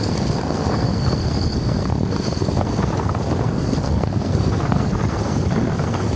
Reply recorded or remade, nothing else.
remade